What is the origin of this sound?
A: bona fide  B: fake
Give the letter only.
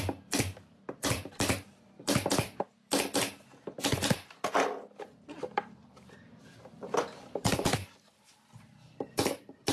B